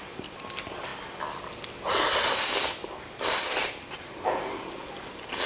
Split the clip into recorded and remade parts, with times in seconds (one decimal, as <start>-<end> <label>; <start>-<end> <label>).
0.0-5.5 recorded